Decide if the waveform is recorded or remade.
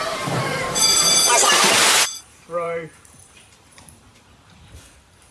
remade